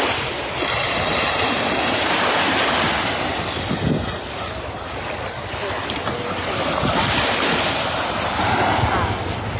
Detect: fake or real real